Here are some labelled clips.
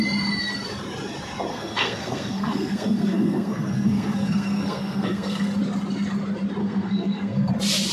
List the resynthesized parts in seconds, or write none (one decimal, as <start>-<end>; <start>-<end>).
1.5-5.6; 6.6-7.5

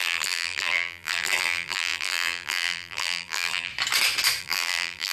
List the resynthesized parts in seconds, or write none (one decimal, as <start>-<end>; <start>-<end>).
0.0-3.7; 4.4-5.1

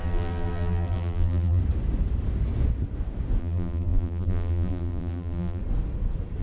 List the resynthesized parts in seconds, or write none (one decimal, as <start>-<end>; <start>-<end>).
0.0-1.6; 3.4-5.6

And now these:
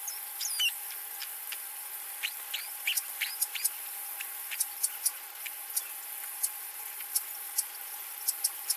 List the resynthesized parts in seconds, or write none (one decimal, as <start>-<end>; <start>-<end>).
none